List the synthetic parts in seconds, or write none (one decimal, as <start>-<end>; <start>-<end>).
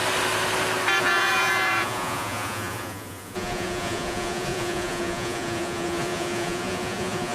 1.0-7.3